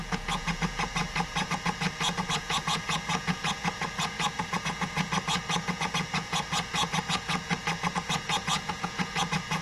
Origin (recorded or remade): remade